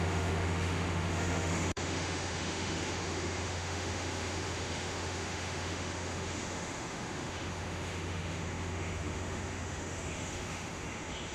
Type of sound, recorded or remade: remade